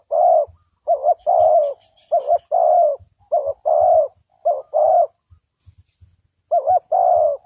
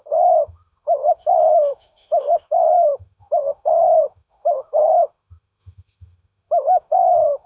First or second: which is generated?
second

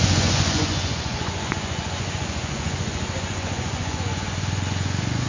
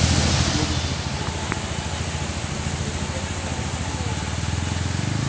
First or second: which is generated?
first